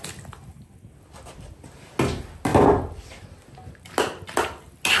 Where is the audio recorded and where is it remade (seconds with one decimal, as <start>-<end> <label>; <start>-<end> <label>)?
0.0-5.0 recorded